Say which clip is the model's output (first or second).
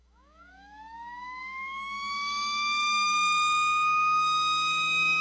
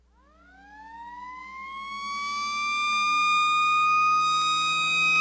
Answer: first